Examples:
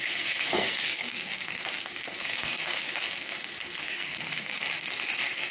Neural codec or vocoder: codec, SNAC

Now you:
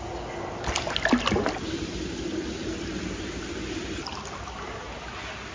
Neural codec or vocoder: none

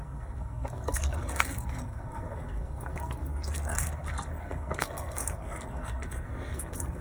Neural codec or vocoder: codec, SNAC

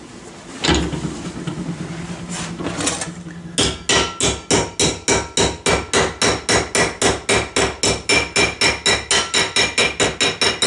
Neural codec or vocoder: none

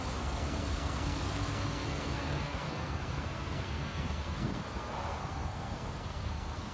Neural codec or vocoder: codec, SNAC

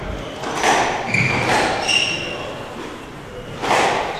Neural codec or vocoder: none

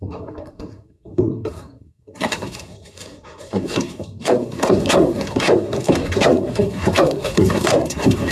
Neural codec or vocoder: codec, SNAC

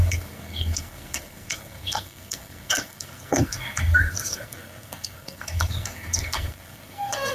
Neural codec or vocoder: codec, SNAC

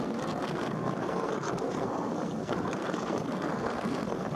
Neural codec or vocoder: codec, SNAC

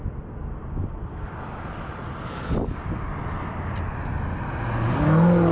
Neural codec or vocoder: none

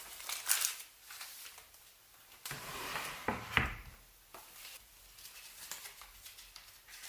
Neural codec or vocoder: none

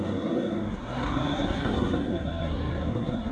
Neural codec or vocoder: codec, SNAC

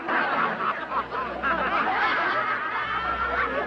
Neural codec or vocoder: none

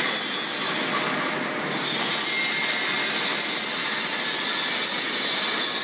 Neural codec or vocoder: none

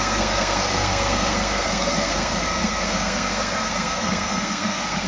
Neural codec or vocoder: codec, SNAC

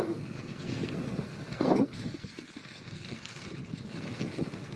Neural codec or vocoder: codec, SNAC